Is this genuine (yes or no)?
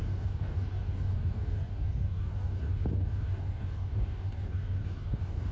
no